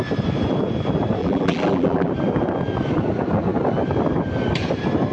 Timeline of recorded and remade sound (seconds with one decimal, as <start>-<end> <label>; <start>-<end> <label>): 0.0-1.2 recorded; 1.2-2.1 remade; 2.1-5.1 recorded